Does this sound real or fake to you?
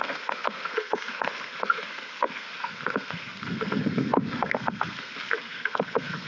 fake